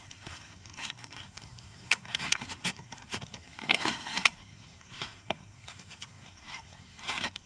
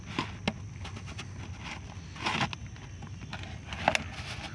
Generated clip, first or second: first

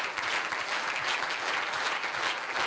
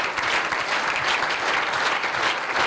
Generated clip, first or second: first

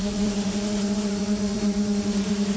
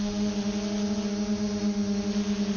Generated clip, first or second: first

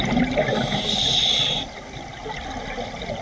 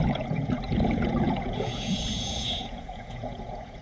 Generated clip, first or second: second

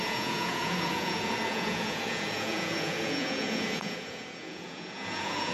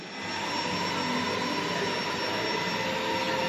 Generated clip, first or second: first